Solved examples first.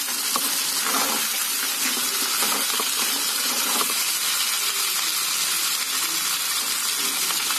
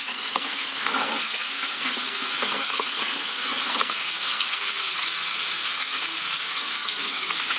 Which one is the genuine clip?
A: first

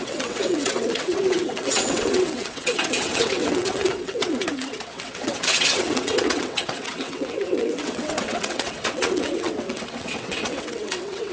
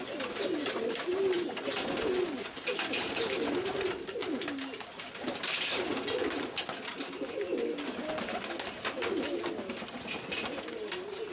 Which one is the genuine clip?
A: second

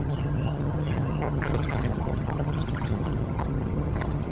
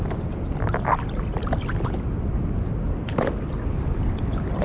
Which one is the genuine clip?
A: second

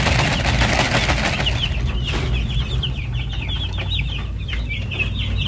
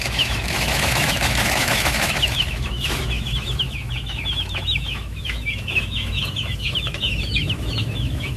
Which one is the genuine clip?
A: first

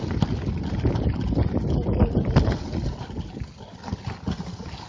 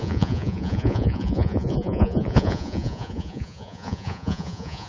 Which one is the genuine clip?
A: first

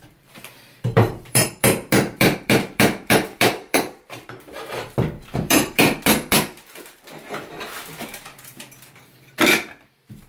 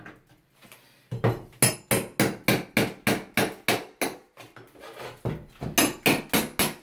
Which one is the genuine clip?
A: second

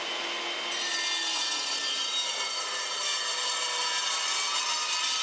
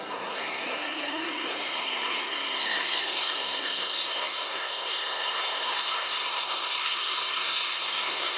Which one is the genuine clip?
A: first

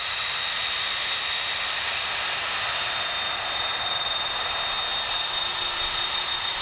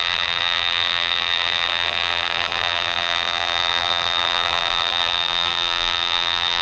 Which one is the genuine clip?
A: first